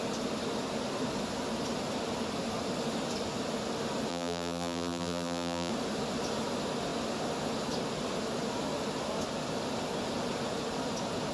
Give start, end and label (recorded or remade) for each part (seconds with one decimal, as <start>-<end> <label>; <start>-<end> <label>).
0.0-4.1 recorded; 4.1-5.7 remade; 5.7-11.3 recorded